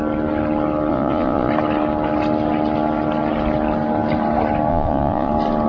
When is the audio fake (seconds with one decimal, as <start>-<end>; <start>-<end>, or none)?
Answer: 0.9-1.5; 4.7-5.3